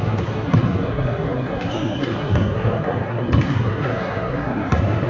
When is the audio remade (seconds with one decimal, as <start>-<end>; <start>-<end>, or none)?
0.0-5.1